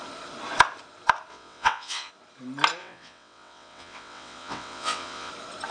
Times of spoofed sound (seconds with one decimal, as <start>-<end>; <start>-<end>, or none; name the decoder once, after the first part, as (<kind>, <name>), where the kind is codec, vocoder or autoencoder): 1.3-2.1 (vocoder, WaveNeXt); 2.8-5.3